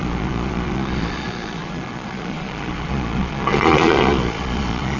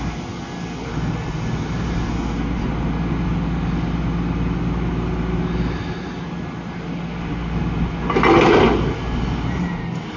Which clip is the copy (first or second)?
first